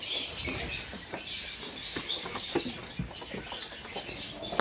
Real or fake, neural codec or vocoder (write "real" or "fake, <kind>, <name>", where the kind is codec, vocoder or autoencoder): real